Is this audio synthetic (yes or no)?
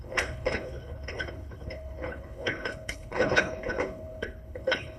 yes